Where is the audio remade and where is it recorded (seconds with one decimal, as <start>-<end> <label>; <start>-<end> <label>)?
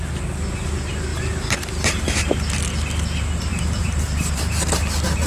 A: 0.0-1.1 recorded; 1.1-2.0 remade; 2.0-3.5 recorded; 3.5-4.4 remade; 4.4-5.3 recorded